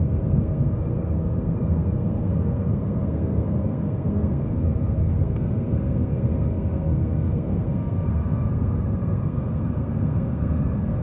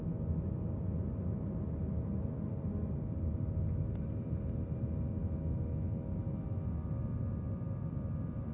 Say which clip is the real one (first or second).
second